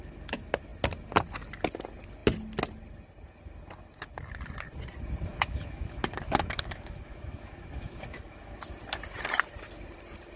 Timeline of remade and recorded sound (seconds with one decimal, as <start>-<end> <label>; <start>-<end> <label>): 0.0-5.3 recorded; 5.3-8.6 remade; 8.6-10.4 recorded